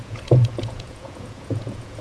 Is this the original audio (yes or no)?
no